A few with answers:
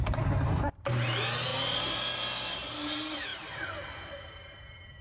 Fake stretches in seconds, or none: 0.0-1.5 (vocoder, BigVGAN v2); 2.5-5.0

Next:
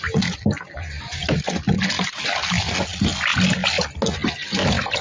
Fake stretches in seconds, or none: none